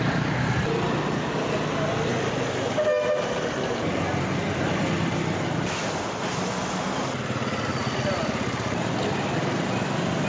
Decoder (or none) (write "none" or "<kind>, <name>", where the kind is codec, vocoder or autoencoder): none